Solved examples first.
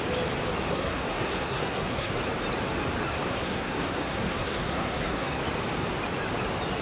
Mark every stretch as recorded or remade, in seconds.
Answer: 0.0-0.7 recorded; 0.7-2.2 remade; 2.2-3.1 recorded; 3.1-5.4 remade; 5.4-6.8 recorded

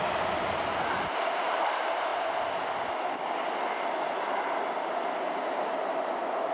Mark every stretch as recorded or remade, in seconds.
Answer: 0.0-6.5 recorded

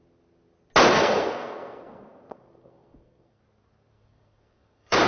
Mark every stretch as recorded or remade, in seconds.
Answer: 0.0-0.9 recorded; 0.9-3.4 remade; 3.4-3.9 recorded; 3.9-5.1 remade